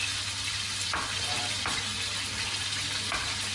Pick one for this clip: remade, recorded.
recorded